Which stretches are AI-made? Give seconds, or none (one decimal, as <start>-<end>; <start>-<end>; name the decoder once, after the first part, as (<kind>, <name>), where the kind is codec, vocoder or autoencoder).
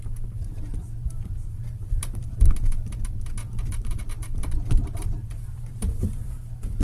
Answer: 1.0-2.5 (vocoder, BigVGAN v2); 3.7-6.8